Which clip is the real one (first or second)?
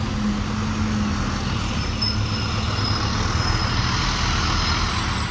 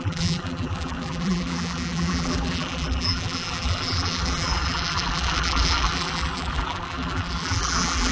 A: first